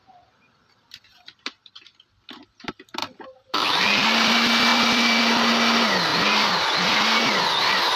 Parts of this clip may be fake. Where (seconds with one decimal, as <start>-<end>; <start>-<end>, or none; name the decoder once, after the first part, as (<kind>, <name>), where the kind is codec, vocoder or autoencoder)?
3.0-3.8 (vocoder, BigVGAN v2); 4.7-5.2; 6.1-7.2